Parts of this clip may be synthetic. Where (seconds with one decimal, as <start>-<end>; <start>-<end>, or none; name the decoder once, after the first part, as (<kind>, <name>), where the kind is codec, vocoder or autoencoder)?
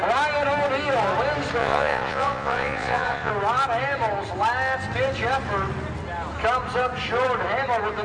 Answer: 1.6-3.3 (vocoder, Vocos)